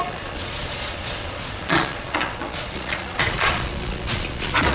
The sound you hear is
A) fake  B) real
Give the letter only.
A